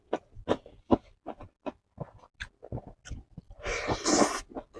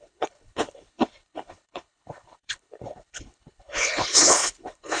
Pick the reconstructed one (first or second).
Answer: second